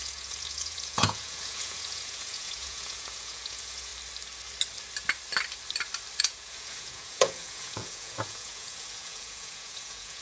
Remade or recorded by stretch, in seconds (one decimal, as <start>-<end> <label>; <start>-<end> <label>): 0.0-3.9 remade; 3.9-6.2 recorded; 6.2-10.2 remade